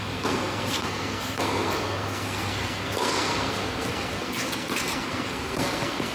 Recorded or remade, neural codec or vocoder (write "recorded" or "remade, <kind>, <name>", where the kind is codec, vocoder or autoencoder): remade, codec, SNAC